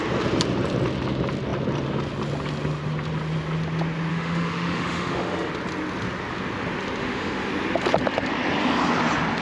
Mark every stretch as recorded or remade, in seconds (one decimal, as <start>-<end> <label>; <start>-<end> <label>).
0.0-4.1 recorded; 4.1-5.5 remade; 5.5-7.0 recorded; 7.0-7.5 remade; 7.5-9.4 recorded